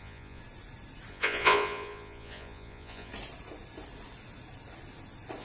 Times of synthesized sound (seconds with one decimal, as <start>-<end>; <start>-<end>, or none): 0.0-0.4; 1.1-3.1